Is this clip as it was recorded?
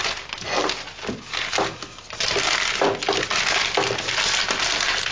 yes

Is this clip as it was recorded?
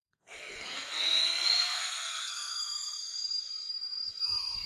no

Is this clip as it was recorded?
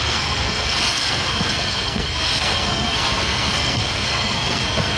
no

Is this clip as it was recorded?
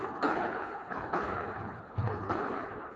no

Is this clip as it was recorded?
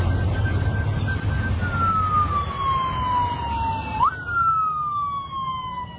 yes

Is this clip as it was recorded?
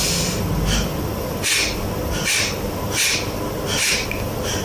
yes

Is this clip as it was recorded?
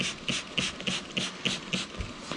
yes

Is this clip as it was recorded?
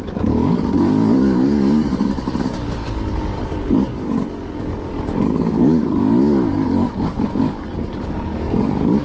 no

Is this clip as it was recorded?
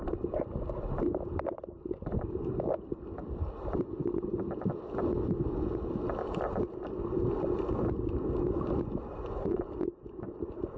yes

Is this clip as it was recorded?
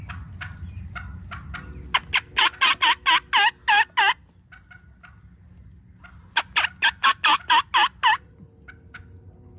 yes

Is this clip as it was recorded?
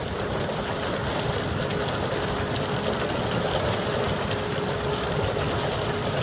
yes